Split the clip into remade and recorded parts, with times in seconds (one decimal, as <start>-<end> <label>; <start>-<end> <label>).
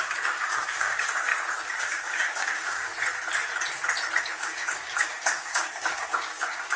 0.0-1.3 remade; 1.3-1.8 recorded; 1.8-2.9 remade; 2.9-4.2 recorded; 4.2-6.8 remade